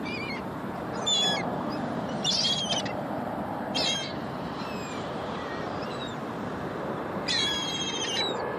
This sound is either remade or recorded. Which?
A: remade